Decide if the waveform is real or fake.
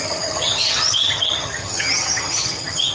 fake